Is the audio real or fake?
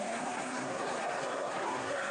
fake